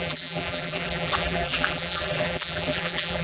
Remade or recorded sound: remade